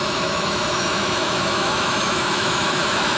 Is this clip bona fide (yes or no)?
no